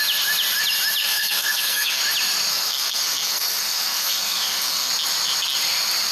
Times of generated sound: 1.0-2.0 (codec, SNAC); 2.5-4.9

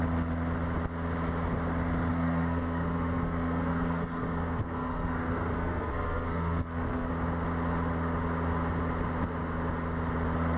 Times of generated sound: 2.1-7.1 (codec, SNAC)

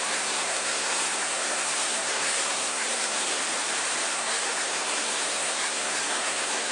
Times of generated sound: 0.0-3.4 (codec, SNAC); 4.1-6.7

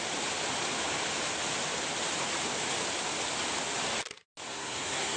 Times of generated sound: 4.5-5.2 (codec, SNAC)

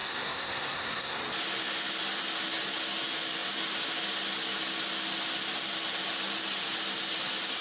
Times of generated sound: 0.0-1.2 (codec, SNAC)

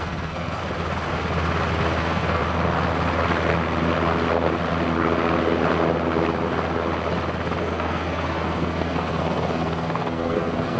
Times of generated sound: 0.0-0.6 (codec, SNAC); 2.0-2.4; 7.6-10.8

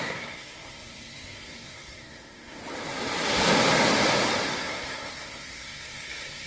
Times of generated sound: 0.0-2.6 (codec, SNAC); 4.5-6.5